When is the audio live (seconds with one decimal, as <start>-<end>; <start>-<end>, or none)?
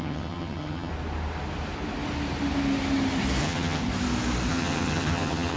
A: 0.9-3.4; 3.8-4.5